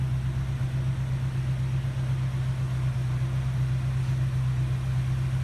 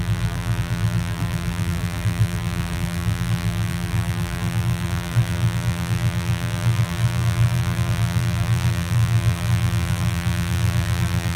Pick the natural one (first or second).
first